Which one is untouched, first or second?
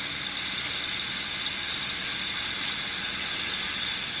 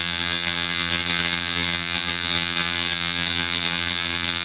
first